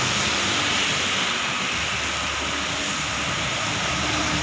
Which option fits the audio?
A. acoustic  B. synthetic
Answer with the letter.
A